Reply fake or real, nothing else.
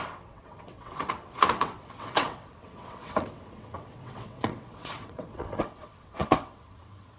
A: fake